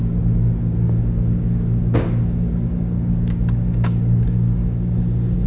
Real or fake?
fake